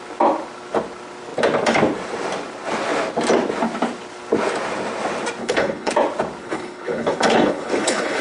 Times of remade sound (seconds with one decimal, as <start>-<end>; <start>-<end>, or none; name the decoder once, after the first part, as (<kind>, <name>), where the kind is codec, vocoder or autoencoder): 5.4-5.9 (codec, HILCodec); 6.4-8.2